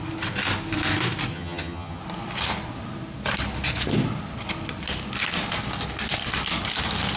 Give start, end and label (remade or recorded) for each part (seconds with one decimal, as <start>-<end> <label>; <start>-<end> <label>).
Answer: 0.0-1.3 recorded; 1.3-2.0 remade; 2.0-7.2 recorded